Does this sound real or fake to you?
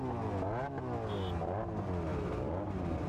real